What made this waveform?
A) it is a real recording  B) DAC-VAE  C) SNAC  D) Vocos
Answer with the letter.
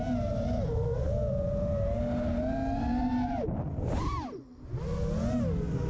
A